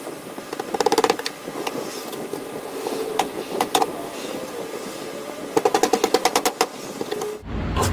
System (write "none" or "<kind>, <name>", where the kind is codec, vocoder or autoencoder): none